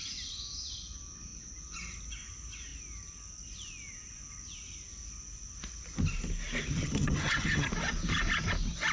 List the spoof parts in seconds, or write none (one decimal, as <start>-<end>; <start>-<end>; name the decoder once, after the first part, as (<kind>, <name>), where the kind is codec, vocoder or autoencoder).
6.7-7.7 (vocoder, HiFi-GAN)